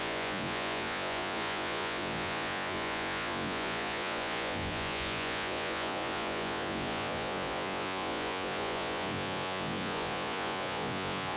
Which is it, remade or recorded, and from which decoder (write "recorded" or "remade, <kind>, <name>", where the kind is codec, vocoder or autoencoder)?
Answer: remade, vocoder, Vocos